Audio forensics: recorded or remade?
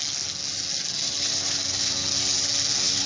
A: recorded